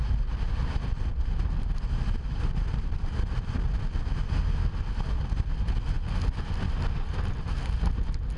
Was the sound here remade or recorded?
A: recorded